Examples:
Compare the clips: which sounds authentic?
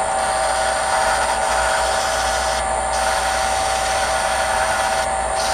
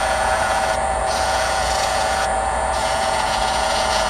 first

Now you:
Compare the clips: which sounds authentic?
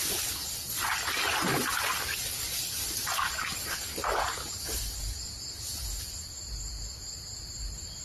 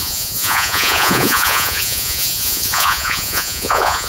first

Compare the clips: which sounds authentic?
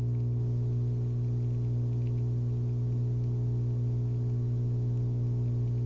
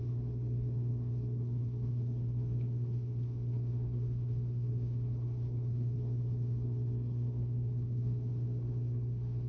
first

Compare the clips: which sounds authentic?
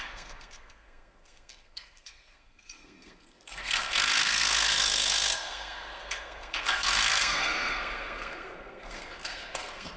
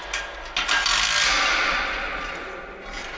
second